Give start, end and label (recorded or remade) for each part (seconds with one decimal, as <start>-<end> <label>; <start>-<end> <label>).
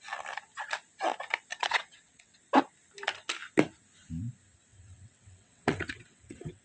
0.0-1.5 recorded; 1.5-2.4 remade; 2.4-4.7 recorded; 4.7-6.6 remade